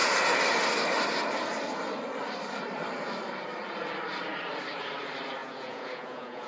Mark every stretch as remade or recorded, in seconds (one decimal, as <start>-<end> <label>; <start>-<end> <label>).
0.0-5.4 recorded; 5.4-6.5 remade